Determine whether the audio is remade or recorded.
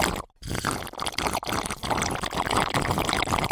recorded